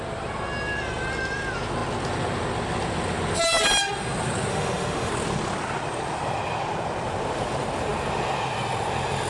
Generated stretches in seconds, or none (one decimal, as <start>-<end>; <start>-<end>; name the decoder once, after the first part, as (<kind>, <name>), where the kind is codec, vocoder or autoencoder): 4.5-5.1 (autoencoder, DAC-VAE)